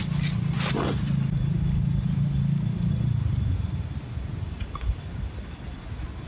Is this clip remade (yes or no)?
no